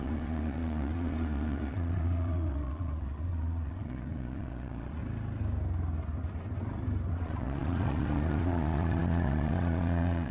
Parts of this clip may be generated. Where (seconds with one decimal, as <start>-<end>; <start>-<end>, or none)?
0.0-5.0; 7.1-10.3